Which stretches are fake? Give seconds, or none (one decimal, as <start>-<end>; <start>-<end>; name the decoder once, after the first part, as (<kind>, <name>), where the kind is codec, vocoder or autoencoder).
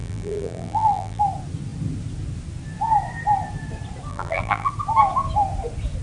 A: 0.0-1.2 (vocoder, BigVGAN v2); 4.1-4.7